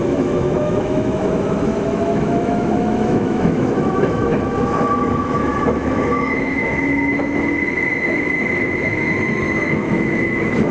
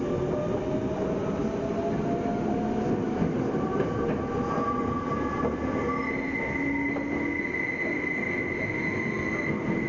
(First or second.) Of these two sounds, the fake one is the first